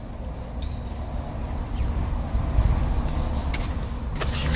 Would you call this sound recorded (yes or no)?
yes